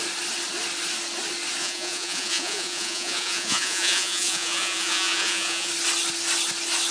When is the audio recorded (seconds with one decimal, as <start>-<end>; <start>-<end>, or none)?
0.0-1.6; 5.7-6.9